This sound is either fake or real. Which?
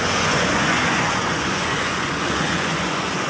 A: fake